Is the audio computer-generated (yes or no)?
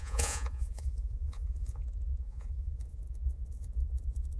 yes